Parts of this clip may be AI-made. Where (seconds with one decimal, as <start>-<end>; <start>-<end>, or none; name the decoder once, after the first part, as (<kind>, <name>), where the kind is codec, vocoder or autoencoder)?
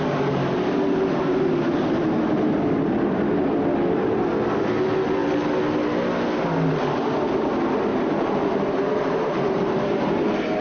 7.9-10.6 (vocoder, BigVGAN v2)